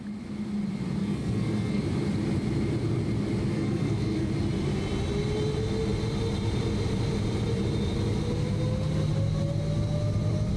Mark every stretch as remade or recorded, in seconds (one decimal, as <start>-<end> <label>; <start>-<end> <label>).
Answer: 0.0-1.0 recorded; 1.0-1.8 remade; 1.8-3.5 recorded; 3.5-4.3 remade; 4.3-10.6 recorded